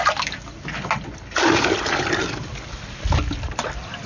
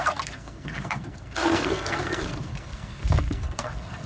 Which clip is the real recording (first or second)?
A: first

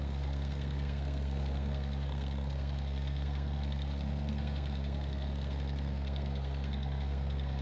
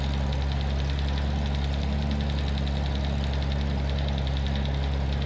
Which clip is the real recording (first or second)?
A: second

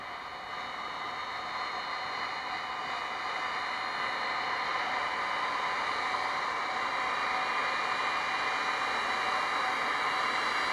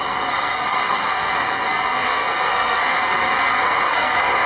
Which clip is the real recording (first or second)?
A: first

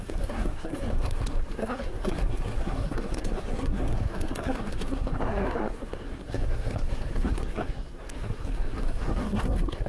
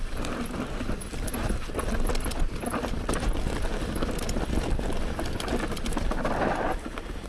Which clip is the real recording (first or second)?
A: second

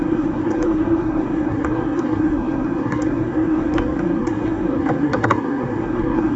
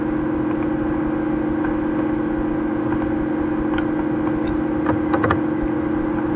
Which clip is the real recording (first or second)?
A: second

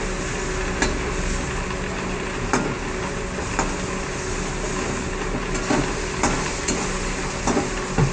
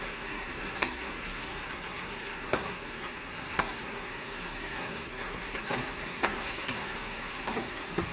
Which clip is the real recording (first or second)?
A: first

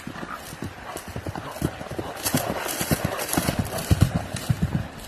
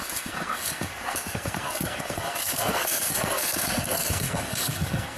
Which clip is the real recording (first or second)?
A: first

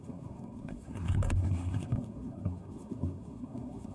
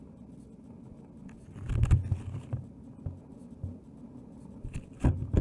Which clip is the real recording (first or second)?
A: second